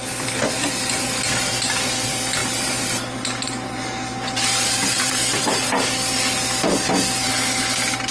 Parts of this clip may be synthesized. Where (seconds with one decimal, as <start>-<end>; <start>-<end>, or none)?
2.4-5.4

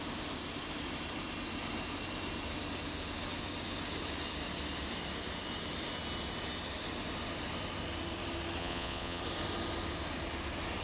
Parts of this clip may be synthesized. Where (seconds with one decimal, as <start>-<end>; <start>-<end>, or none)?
8.6-9.2

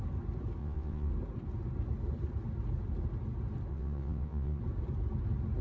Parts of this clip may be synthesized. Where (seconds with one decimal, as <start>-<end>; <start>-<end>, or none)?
0.6-1.1; 3.7-4.6

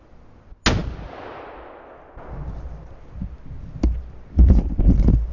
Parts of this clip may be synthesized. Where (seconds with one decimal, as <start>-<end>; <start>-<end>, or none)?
none

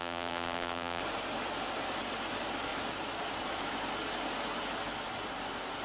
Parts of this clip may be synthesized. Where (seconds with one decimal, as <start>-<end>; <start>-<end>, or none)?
0.0-1.0